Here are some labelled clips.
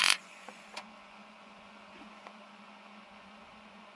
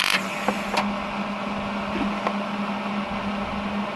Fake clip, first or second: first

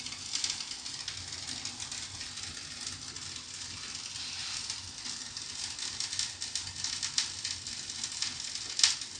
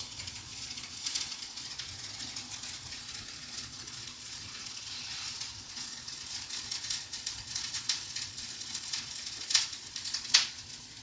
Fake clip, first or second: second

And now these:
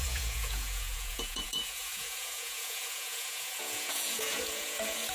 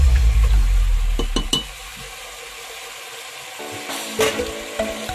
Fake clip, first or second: first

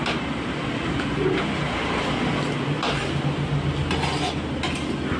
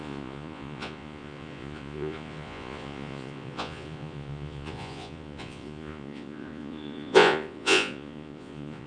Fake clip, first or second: second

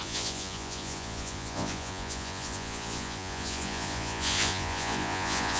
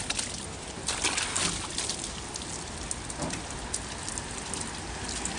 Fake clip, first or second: first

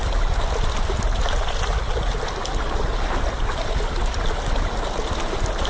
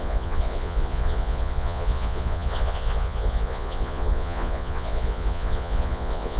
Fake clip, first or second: second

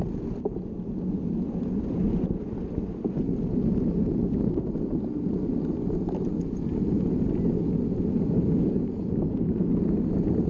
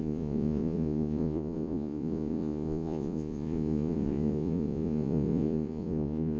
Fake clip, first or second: second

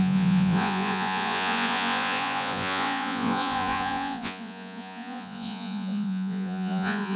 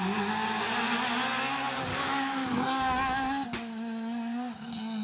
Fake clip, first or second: first